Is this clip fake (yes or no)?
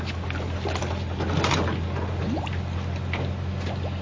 no